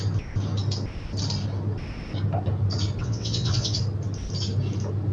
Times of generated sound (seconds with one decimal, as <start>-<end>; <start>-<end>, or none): 3.0-3.8